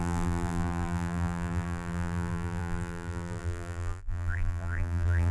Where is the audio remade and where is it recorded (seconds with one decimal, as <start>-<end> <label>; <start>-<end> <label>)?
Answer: 0.0-5.3 remade